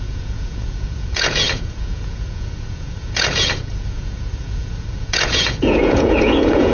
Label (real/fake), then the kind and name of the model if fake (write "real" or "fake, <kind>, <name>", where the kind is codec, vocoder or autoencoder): fake, vocoder, Vocos